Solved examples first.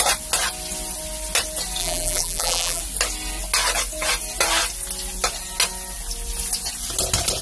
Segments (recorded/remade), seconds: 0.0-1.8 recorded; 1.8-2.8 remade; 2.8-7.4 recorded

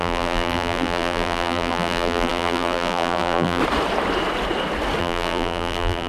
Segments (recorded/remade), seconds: 0.0-3.6 remade; 3.6-5.0 recorded; 5.0-6.1 remade

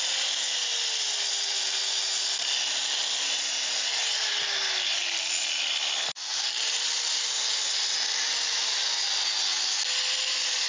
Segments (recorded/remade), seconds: 0.0-0.7 recorded; 0.7-2.4 remade; 2.4-3.0 recorded; 3.0-4.4 remade; 4.4-6.3 recorded; 6.3-7.1 remade; 7.1-10.7 recorded

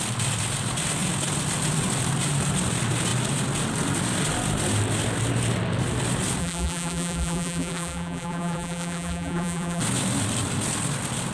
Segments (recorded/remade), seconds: 0.0-6.4 recorded; 6.4-9.8 remade; 9.8-11.3 recorded

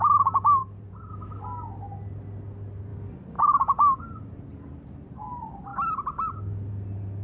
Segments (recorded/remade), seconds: 0.0-0.6 recorded; 0.6-1.1 remade; 1.1-7.2 recorded

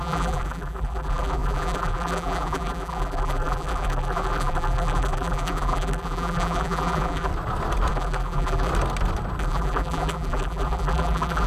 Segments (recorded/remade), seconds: 0.0-7.3 remade; 7.3-7.9 recorded; 7.9-8.7 remade; 8.7-9.4 recorded; 9.4-11.5 remade

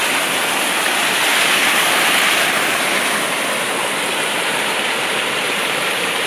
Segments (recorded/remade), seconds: 0.0-1.3 recorded; 1.3-1.9 remade; 1.9-4.1 recorded; 4.1-6.3 remade

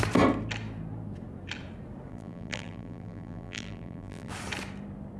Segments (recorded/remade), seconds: 0.0-2.1 recorded; 2.1-4.3 remade; 4.3-5.2 recorded